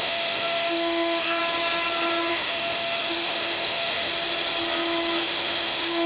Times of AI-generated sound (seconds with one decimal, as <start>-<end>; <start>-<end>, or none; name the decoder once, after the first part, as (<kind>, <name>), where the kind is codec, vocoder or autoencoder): 0.0-1.4 (autoencoder, DAC-VAE); 2.3-4.1; 5.2-6.1